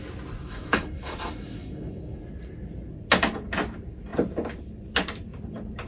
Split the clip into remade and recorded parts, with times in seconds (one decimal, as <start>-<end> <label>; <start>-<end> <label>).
0.0-0.4 recorded; 0.4-2.2 remade; 2.2-5.9 recorded